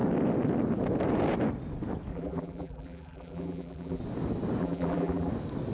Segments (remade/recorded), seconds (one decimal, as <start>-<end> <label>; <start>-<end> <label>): 0.0-2.1 recorded; 2.1-4.0 remade; 4.0-4.6 recorded; 4.6-5.3 remade; 5.3-5.7 recorded